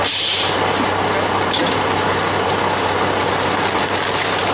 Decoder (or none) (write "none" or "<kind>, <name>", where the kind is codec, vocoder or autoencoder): none